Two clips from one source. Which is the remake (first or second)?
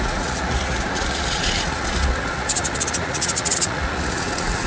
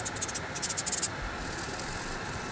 first